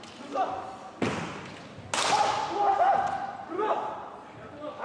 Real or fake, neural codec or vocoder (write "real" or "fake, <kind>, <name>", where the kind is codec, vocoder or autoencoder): real